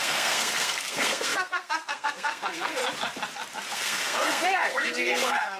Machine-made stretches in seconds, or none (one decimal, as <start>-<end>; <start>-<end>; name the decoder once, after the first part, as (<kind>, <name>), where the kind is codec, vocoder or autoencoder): 0.0-2.8 (codec, SNAC); 3.7-5.6